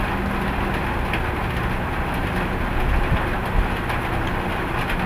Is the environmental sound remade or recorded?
recorded